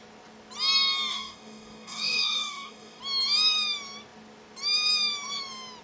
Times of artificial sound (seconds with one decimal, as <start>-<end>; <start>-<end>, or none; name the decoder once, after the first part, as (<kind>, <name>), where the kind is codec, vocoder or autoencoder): 1.1-3.0 (codec, DAC)